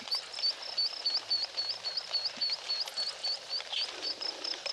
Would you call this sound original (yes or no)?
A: yes